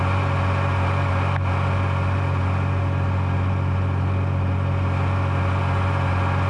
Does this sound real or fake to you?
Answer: real